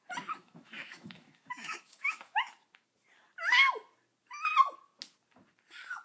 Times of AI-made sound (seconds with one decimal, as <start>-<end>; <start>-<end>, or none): 0.4-2.4